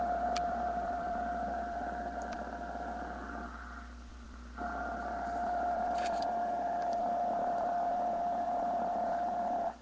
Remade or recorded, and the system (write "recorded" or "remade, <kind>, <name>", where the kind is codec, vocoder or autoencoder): remade, vocoder, BigVGAN v2